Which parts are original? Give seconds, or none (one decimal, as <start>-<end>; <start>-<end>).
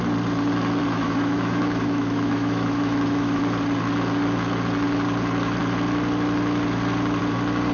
0.0-0.8; 3.4-7.7